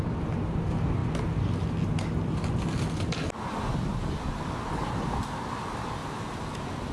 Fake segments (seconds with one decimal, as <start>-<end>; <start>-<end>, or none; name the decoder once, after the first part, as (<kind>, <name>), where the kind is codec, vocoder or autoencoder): none